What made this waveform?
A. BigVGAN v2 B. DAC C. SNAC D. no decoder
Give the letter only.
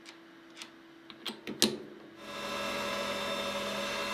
D